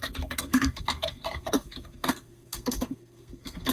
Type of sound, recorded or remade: remade